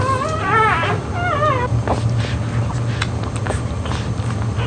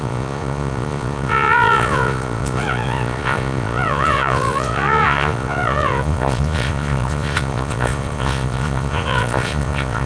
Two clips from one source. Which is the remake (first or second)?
second